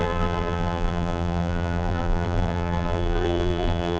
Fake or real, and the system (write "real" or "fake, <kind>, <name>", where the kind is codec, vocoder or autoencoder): fake, vocoder, BigVGAN v2